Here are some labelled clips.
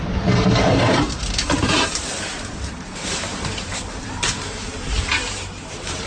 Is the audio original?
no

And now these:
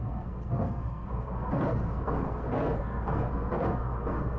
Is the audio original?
no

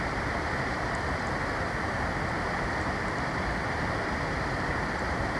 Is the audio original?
yes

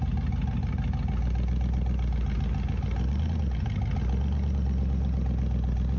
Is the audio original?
yes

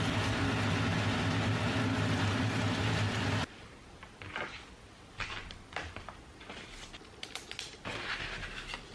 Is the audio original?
yes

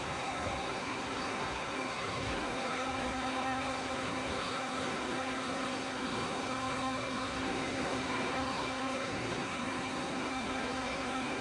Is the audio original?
no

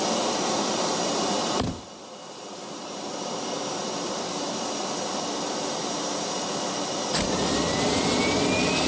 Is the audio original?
yes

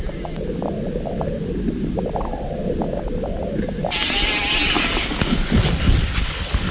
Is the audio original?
yes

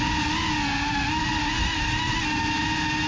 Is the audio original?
yes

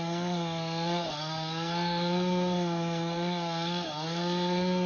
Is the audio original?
no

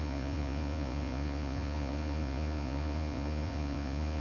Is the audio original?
no